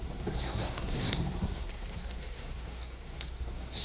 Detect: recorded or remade remade